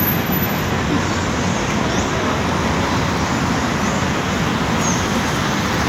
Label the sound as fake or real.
real